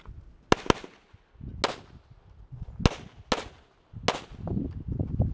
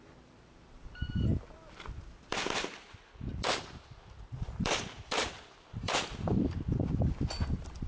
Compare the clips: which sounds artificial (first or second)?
second